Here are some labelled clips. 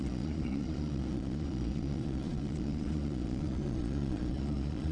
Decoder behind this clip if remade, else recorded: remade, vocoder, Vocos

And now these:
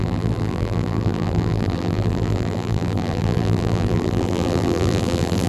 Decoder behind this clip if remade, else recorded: remade, vocoder, BigVGAN v2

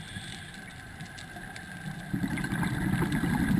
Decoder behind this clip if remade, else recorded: recorded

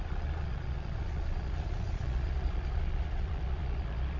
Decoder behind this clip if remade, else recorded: remade, vocoder, Vocos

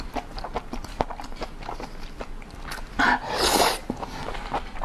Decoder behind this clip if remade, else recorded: recorded